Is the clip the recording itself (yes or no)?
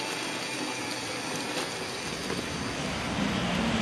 no